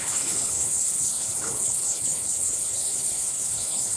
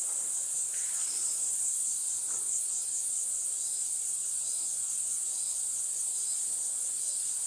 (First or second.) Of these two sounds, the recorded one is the second